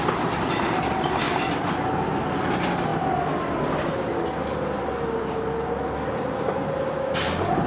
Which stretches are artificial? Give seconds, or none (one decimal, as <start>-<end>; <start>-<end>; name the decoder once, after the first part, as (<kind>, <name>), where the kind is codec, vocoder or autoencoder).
none